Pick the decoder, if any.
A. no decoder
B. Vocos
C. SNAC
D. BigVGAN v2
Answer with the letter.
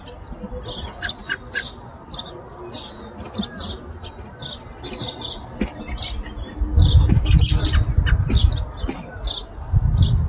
A